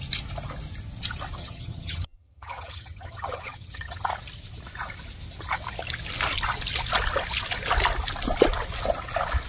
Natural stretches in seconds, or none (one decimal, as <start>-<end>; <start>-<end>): 0.0-1.4; 4.1-9.5